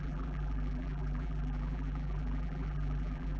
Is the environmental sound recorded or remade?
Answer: remade